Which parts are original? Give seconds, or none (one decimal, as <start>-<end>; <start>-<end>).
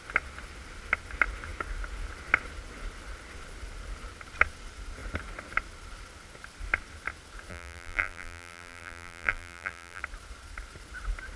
0.0-7.5; 10.0-11.4